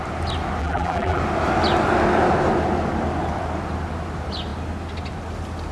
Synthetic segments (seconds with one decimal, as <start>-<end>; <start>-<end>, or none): 0.6-1.2